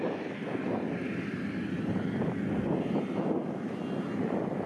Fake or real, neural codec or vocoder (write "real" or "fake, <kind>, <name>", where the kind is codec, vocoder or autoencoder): real